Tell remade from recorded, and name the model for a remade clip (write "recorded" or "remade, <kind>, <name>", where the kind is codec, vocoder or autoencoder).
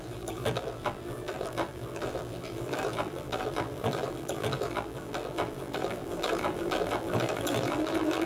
remade, vocoder, BigVGAN v2